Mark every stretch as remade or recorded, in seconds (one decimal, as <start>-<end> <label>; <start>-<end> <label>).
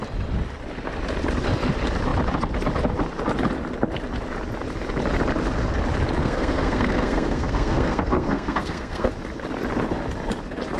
0.0-6.2 recorded; 6.2-9.1 remade; 9.1-10.8 recorded